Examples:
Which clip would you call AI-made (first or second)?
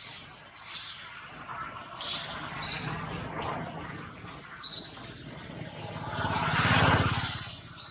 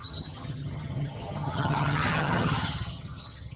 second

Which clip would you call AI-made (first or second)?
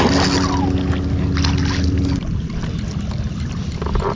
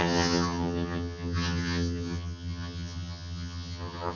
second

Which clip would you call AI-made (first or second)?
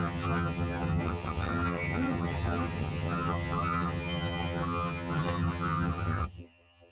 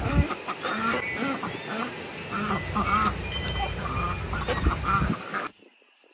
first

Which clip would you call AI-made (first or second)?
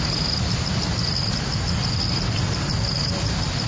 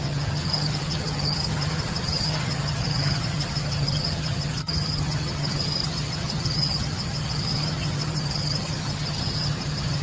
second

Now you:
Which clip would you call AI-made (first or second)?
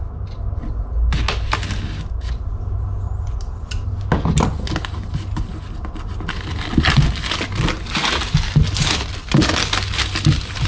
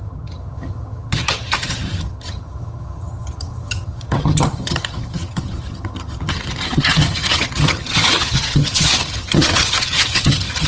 second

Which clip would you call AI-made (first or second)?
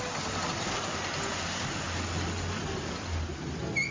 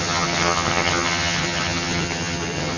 second